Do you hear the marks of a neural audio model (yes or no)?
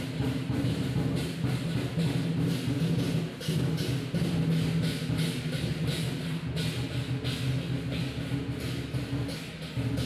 no